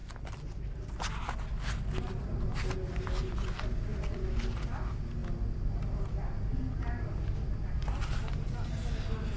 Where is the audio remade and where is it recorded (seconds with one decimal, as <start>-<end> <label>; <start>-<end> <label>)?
0.0-9.4 recorded